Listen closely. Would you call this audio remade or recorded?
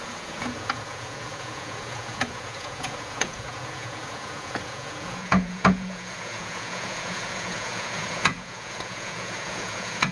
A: remade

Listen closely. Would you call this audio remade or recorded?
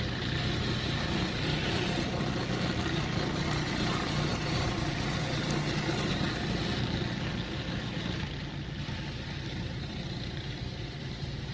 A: recorded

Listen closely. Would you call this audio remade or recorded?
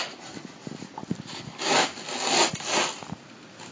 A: recorded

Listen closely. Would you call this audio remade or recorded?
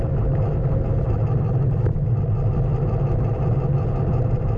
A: recorded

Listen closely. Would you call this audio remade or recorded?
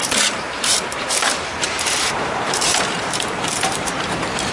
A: remade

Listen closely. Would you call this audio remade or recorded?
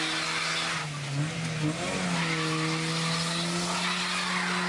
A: recorded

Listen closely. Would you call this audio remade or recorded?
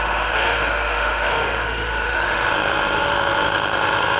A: remade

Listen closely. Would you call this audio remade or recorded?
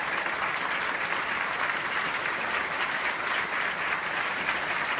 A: recorded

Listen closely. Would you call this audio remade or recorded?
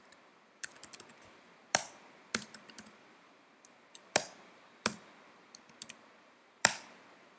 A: remade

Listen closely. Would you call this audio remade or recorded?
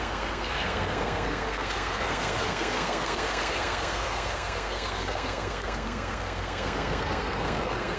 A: remade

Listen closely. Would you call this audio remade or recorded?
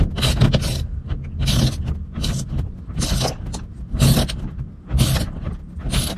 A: recorded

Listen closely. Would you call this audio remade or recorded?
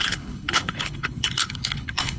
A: remade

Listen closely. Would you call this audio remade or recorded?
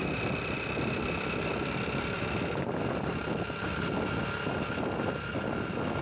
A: recorded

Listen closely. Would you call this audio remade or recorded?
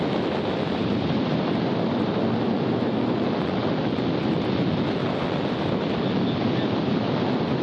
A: recorded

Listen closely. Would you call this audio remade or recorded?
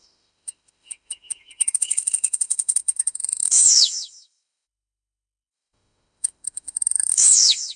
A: remade